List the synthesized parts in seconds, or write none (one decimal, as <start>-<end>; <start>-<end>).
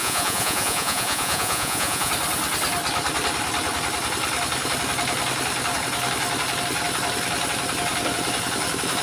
0.0-2.1